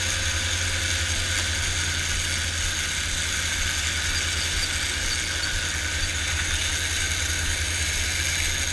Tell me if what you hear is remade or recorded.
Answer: recorded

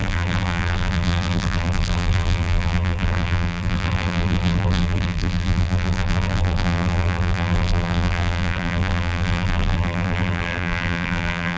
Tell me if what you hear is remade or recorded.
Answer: remade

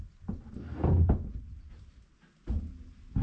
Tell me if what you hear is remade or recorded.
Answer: recorded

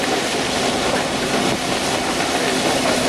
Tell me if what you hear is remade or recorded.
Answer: recorded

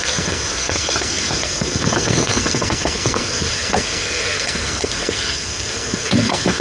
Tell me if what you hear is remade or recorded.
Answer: remade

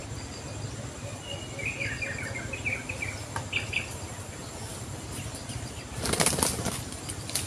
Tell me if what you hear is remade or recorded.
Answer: recorded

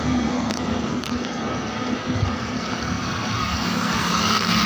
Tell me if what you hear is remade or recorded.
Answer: remade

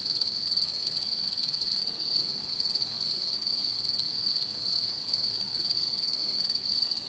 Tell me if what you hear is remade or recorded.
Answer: remade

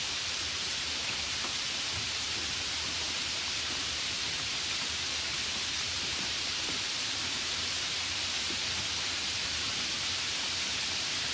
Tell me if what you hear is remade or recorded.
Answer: remade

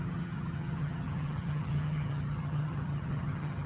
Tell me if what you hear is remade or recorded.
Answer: remade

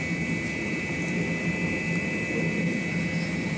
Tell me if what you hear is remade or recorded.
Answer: recorded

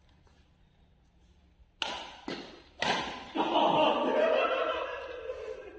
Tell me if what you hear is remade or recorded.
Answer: recorded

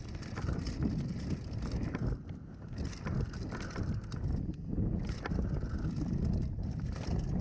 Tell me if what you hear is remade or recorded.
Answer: recorded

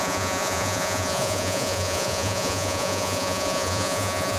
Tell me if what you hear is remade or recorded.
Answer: remade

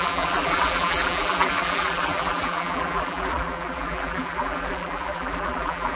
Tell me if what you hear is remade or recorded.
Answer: remade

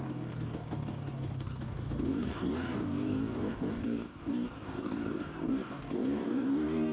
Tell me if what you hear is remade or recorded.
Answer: remade